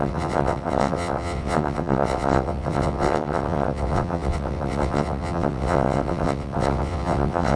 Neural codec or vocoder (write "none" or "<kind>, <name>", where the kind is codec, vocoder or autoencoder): vocoder, WaveNeXt